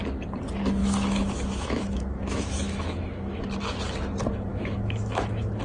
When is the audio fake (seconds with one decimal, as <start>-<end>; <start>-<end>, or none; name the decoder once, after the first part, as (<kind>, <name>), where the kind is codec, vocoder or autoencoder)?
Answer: 0.8-3.4 (autoencoder, DAC-VAE); 4.5-5.6